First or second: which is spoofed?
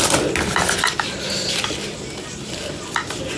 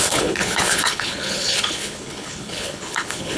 second